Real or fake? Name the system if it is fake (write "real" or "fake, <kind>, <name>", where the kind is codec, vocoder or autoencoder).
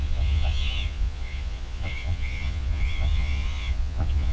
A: fake, vocoder, Vocos